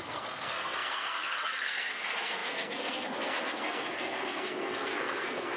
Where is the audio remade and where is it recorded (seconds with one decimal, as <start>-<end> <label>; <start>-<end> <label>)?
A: 0.0-5.6 remade